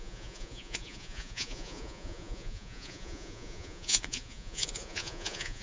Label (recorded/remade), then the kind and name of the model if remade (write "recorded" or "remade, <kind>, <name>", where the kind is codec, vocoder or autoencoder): remade, vocoder, Vocos